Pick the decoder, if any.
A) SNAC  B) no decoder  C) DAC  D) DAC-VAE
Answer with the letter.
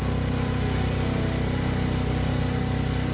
B